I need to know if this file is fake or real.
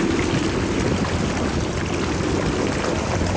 real